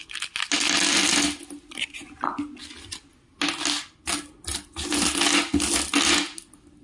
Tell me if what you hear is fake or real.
real